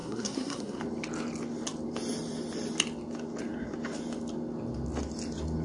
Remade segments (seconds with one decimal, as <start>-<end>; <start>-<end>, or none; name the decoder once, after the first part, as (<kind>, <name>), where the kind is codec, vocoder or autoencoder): 0.0-0.8 (codec, SNAC)